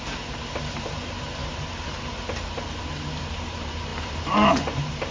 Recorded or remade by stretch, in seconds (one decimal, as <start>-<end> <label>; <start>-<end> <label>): 0.0-5.1 remade